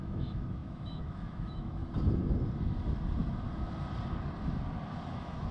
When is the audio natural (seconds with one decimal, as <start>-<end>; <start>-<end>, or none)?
1.8-5.1